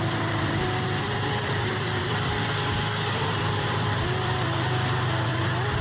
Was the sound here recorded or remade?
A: remade